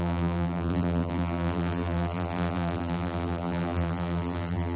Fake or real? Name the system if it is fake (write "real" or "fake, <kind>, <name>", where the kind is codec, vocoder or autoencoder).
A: fake, vocoder, BigVGAN v2